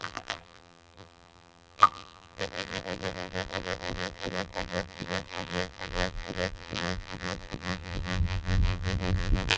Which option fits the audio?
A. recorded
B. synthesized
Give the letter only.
B